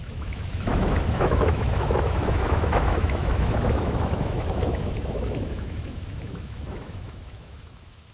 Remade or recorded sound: remade